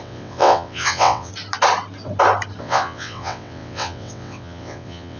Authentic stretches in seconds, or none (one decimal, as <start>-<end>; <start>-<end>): 1.3-2.6